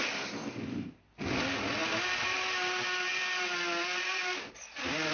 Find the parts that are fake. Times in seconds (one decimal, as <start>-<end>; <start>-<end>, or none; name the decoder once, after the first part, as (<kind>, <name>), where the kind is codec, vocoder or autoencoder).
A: 0.0-1.1 (vocoder, BigVGAN v2); 1.8-2.8